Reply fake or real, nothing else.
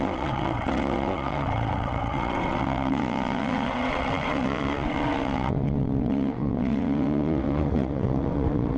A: fake